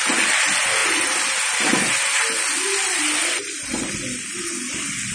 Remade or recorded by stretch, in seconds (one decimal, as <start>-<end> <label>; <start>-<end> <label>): 0.0-5.1 recorded